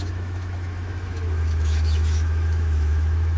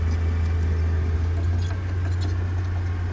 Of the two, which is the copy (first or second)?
first